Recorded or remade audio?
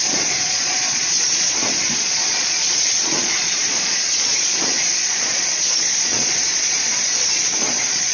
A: remade